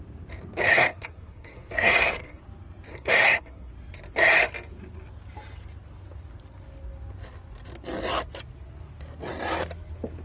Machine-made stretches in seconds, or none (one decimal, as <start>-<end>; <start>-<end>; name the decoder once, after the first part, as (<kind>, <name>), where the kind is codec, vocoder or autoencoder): 0.7-2.4 (codec, SNAC); 2.9-3.7

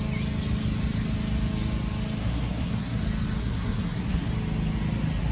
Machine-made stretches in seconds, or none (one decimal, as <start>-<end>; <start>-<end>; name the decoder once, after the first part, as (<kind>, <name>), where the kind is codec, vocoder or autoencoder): 2.2-3.0 (codec, SNAC); 3.4-4.3

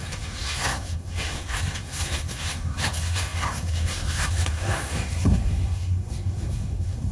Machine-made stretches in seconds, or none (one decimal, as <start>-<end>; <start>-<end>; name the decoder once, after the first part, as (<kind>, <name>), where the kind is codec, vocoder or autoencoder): 0.0-7.1 (codec, SNAC)

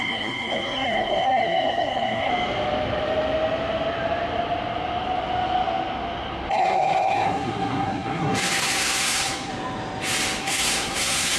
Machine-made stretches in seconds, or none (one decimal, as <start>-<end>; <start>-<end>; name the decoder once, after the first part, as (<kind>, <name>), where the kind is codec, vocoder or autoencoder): 0.0-2.3 (codec, SNAC); 6.5-9.5; 10.4-11.4

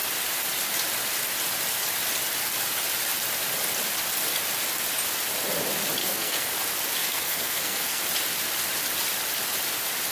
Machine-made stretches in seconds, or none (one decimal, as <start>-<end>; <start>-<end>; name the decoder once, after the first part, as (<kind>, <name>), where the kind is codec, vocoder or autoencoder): 6.0-6.5 (codec, SNAC); 7.0-8.0

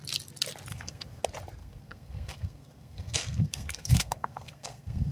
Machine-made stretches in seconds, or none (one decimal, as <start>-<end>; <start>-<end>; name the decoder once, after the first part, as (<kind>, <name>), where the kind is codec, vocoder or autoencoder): 0.7-1.2 (codec, SNAC); 1.6-5.1

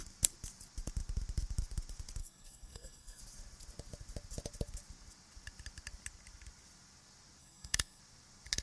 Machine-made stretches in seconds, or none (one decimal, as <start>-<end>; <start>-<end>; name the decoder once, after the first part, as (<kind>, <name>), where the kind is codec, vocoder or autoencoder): 2.2-3.2 (codec, SNAC); 7.4-8.0